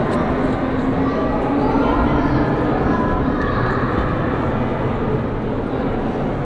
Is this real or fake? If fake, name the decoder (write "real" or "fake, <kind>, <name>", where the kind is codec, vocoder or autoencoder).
real